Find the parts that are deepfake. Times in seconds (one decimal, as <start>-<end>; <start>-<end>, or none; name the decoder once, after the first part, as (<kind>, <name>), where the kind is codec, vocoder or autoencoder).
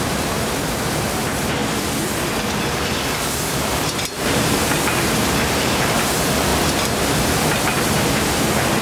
0.0-1.6 (vocoder, BigVGAN v2); 3.3-6.5; 7.8-8.8